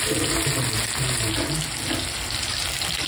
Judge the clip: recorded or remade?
recorded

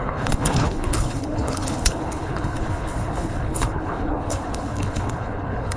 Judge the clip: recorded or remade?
remade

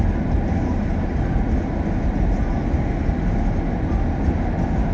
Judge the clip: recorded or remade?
recorded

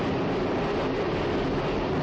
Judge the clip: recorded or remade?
recorded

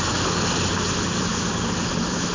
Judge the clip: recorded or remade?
recorded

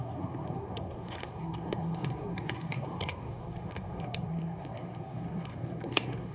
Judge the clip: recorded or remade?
remade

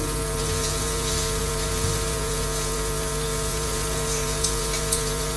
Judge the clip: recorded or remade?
remade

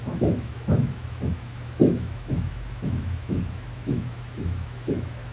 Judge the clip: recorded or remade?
remade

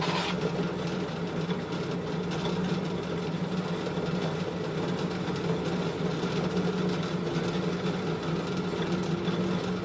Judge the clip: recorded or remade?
recorded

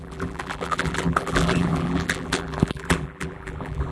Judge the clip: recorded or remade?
remade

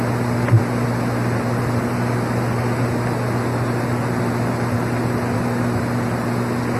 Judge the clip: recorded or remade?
recorded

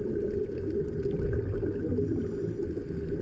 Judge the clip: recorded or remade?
recorded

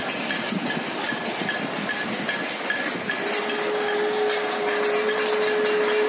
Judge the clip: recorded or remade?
recorded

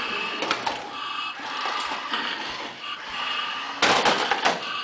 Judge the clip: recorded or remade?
recorded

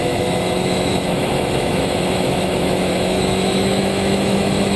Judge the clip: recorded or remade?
remade